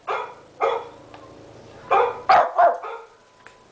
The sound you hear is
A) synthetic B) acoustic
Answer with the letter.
B